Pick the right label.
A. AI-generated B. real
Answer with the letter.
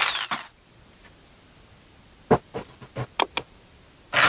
B